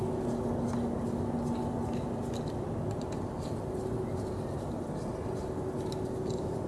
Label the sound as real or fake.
real